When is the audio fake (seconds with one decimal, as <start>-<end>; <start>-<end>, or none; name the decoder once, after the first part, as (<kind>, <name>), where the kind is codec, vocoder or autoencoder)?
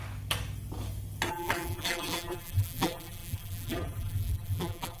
1.3-5.0 (vocoder, BigVGAN v2)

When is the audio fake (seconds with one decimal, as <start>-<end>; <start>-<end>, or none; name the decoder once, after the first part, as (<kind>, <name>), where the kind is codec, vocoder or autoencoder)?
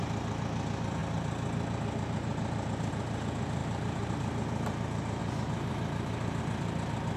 3.6-4.1 (vocoder, BigVGAN v2); 5.2-6.4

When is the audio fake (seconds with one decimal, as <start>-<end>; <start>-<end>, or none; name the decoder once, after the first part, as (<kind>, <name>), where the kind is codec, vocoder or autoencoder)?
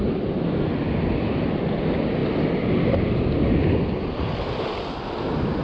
none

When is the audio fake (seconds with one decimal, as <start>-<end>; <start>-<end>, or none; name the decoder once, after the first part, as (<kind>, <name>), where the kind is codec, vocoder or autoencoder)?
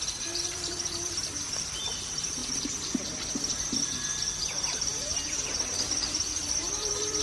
0.0-2.4 (vocoder, BigVGAN v2); 4.4-7.2